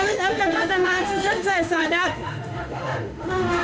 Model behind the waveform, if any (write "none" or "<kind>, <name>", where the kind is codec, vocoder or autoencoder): autoencoder, DAC-VAE